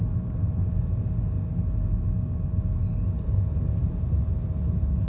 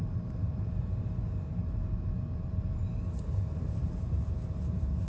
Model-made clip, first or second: second